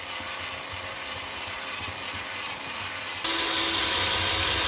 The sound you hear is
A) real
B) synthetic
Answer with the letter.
A